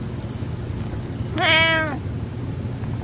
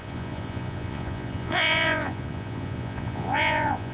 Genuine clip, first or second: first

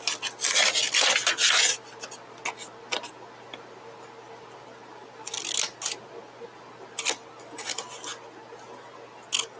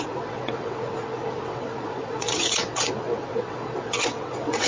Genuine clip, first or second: first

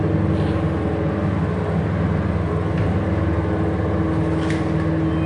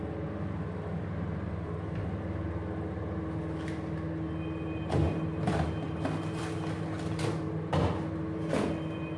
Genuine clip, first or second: first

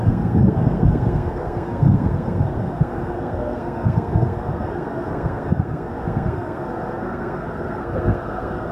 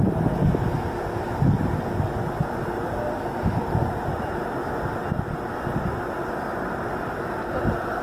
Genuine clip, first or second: second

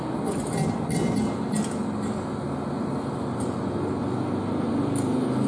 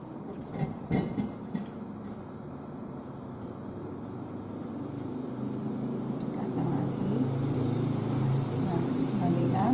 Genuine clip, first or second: first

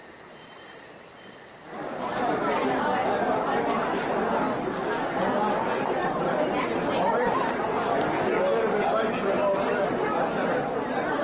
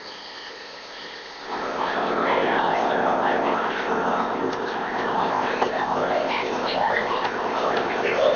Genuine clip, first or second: first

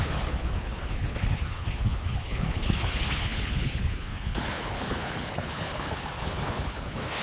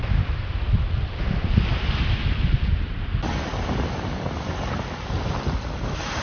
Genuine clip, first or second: second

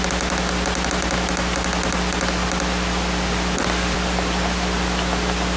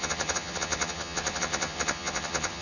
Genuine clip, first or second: first